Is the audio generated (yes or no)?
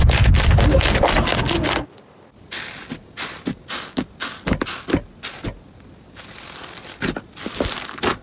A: no